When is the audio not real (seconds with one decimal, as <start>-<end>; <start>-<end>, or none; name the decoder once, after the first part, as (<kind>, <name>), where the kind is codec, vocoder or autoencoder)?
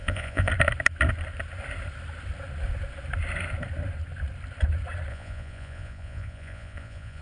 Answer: 0.0-0.5 (vocoder, Vocos); 5.1-7.2